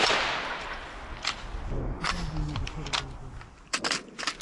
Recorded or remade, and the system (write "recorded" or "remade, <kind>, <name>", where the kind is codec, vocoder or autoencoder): recorded